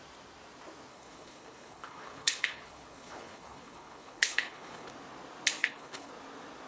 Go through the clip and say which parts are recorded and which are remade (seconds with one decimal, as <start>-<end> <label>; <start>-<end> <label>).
0.0-0.9 recorded; 0.9-4.9 remade; 4.9-5.6 recorded; 5.6-6.1 remade; 6.1-6.7 recorded